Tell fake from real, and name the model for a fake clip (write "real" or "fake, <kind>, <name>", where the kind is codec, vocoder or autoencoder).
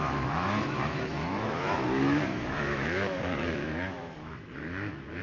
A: fake, autoencoder, DAC-VAE